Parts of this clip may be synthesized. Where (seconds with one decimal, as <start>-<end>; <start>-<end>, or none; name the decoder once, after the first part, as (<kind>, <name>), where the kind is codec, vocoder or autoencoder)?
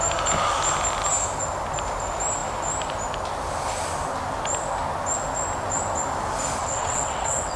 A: 6.6-7.6 (vocoder, WaveNeXt)